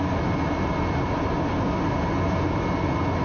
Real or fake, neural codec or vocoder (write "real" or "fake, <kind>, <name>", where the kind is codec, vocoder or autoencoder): real